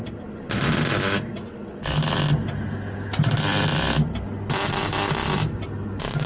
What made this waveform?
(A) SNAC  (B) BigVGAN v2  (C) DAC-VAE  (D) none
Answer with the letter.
D